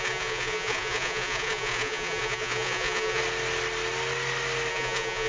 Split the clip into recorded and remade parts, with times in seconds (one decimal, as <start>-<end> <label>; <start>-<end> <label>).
0.0-3.2 remade; 3.2-4.7 recorded; 4.7-5.3 remade